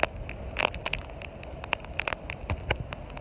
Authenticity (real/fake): real